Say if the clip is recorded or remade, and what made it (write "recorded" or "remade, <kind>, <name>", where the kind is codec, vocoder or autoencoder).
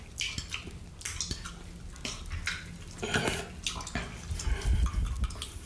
recorded